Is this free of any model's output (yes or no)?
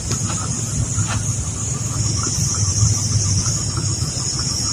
yes